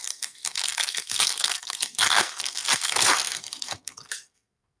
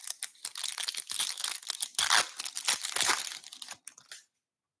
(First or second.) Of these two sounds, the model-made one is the first